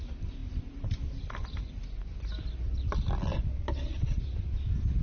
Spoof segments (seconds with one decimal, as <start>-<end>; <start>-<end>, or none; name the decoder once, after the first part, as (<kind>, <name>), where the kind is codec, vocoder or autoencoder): none